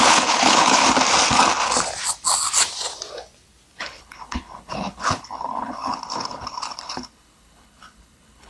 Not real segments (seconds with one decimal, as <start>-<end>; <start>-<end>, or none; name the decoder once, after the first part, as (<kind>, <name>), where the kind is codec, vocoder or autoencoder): 0.0-0.8 (codec, HILCodec); 3.8-8.5